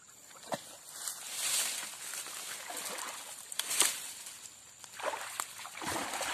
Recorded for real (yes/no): yes